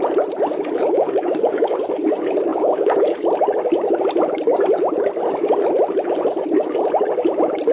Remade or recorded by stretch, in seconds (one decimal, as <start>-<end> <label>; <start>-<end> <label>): 0.0-0.8 recorded; 0.8-2.1 remade; 2.1-2.5 recorded; 2.5-3.2 remade; 3.2-7.7 recorded